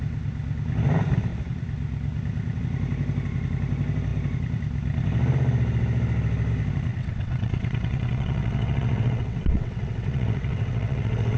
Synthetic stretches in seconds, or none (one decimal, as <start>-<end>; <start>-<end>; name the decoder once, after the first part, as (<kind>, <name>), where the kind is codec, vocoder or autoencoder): 6.9-11.4 (vocoder, WaveNeXt)

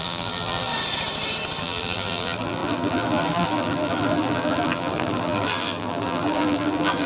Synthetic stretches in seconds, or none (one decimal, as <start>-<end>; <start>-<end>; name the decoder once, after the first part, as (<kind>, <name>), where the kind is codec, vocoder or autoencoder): 0.0-0.7 (vocoder, BigVGAN v2); 1.6-7.1

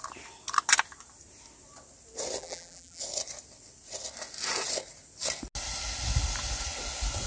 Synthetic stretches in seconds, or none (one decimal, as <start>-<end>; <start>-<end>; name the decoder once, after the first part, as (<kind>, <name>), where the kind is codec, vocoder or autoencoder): 2.4-3.0 (vocoder, BigVGAN v2)

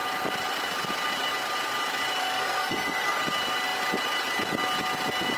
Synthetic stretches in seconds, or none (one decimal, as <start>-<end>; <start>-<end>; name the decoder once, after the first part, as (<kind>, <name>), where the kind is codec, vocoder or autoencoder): 2.2-3.2 (codec, SNAC)

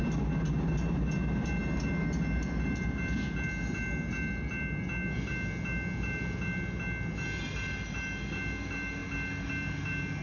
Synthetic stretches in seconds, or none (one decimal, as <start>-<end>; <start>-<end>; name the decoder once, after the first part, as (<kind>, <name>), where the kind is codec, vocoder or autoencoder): none

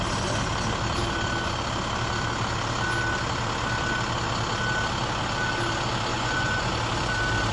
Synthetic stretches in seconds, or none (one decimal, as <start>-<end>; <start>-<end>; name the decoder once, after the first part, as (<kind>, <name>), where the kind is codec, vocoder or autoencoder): 6.1-6.7 (vocoder, Vocos)